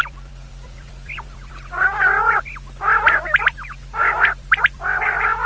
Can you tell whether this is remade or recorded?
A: remade